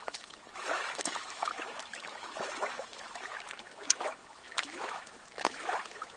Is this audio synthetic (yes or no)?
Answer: yes